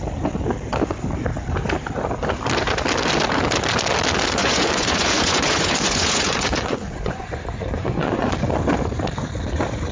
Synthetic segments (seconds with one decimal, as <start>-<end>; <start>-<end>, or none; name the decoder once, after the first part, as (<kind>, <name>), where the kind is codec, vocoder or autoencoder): 4.4-8.3 (vocoder, Vocos)